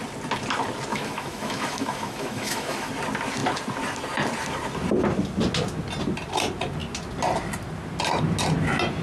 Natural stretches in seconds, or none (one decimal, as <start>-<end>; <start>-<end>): 0.0-0.9; 2.9-9.0